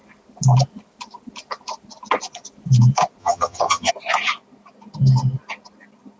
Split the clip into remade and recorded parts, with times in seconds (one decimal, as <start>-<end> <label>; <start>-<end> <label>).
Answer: 0.0-3.2 recorded; 3.2-3.9 remade; 3.9-6.2 recorded